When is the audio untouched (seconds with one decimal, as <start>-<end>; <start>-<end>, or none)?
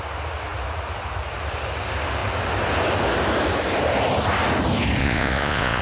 0.0-5.0